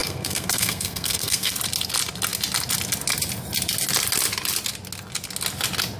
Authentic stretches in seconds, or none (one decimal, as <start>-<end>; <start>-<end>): 1.5-6.0